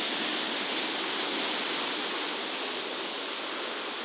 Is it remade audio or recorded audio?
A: recorded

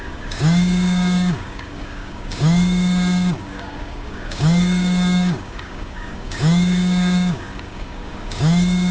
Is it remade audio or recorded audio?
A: remade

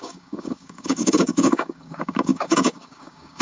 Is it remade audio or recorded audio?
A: remade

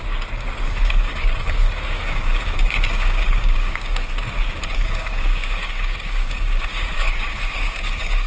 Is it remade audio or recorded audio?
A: remade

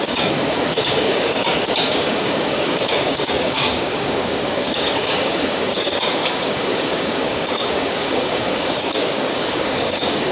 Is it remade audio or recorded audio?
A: remade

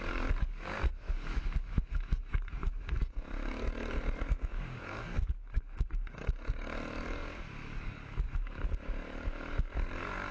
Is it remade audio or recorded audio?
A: remade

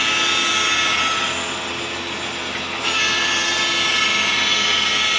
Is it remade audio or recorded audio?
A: recorded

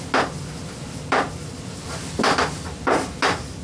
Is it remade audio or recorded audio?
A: recorded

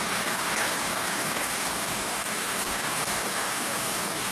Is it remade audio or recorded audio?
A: remade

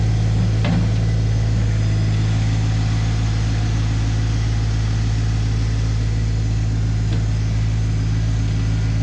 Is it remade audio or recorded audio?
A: recorded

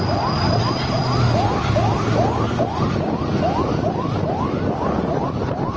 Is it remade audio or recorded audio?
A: recorded